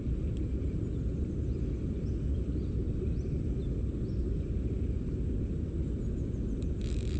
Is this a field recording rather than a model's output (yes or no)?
yes